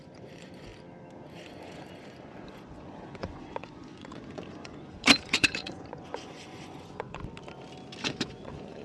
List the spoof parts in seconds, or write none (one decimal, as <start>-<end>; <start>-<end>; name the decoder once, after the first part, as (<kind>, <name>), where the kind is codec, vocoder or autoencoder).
0.0-0.7 (vocoder, Vocos); 1.3-7.2; 8.0-8.8